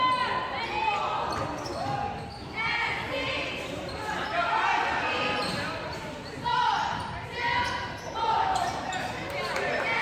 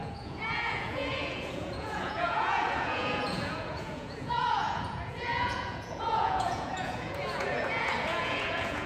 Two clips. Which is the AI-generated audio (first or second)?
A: second